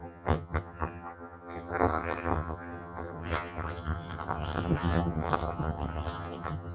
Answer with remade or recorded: remade